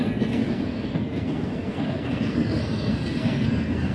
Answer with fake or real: fake